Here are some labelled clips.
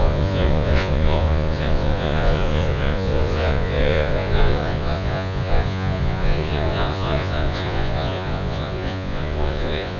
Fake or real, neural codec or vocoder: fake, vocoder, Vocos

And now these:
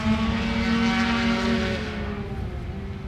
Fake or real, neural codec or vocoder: real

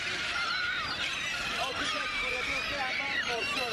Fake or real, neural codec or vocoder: fake, vocoder, BigVGAN v2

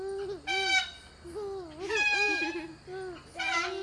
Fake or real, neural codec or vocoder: real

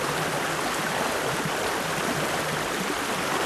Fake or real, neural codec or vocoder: real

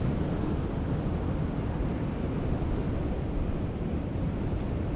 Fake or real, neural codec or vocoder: real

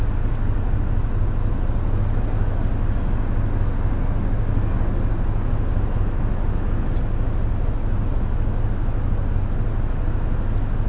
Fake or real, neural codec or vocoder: real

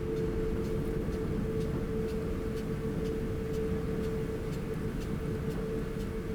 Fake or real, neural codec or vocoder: real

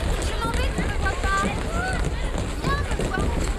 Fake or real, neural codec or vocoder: real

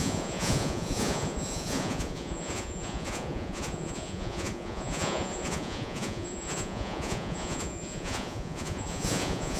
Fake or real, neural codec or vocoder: fake, vocoder, Vocos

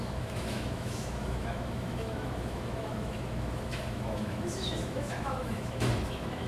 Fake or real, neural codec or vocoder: fake, autoencoder, DAC-VAE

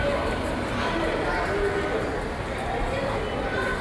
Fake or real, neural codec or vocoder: real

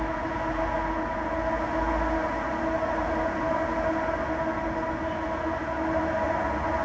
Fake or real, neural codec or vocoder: real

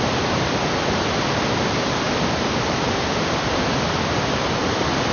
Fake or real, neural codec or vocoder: fake, vocoder, BigVGAN v2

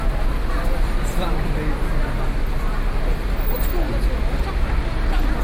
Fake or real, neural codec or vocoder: real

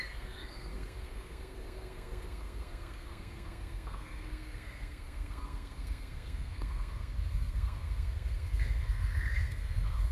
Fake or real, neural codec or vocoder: fake, codec, SNAC